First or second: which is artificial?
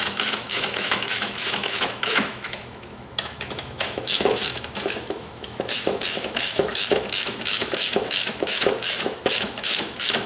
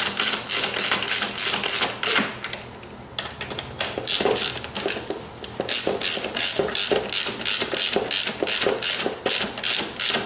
first